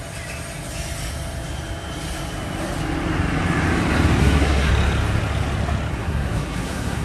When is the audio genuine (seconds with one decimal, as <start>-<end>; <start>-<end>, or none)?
0.0-4.2; 4.7-5.9